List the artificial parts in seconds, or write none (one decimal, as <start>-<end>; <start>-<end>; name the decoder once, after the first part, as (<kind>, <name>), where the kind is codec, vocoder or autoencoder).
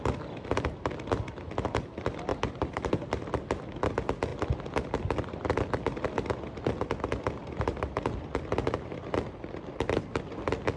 2.3-2.9 (vocoder, BigVGAN v2); 7.4-7.9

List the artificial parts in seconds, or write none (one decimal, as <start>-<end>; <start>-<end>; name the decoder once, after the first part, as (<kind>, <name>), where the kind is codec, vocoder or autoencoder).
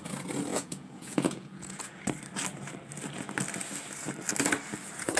0.5-2.0 (vocoder, Vocos)